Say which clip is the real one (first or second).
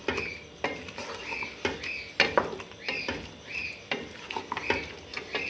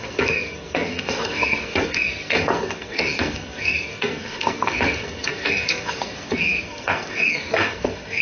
first